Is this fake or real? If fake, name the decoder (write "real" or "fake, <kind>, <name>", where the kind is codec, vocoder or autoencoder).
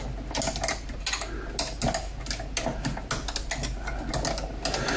real